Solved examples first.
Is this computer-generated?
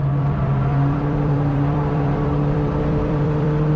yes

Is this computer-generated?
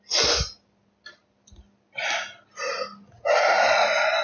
no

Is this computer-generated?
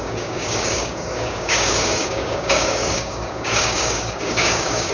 yes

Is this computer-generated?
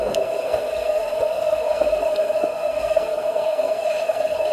yes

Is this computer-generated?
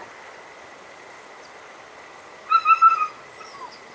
no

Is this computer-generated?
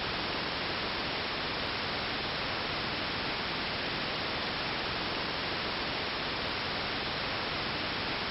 no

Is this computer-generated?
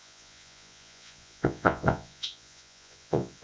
yes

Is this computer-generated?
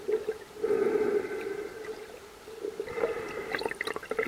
yes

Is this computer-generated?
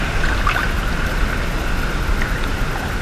no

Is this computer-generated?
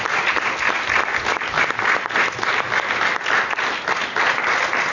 no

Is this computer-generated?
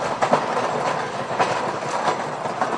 no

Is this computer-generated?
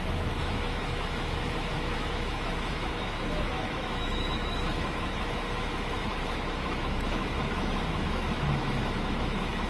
yes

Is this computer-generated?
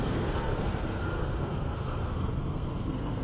yes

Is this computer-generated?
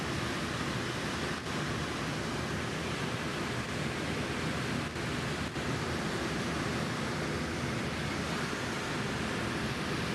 no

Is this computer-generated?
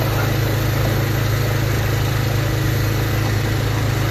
no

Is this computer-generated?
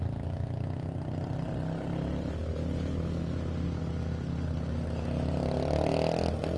no